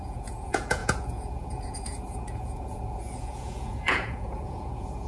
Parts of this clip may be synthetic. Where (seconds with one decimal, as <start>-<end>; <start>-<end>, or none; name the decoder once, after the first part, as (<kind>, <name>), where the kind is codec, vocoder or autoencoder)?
0.0-5.1 (vocoder, Vocos)